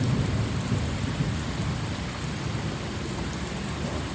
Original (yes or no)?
yes